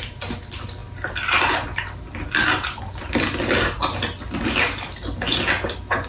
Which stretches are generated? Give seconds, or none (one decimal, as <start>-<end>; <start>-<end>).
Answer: none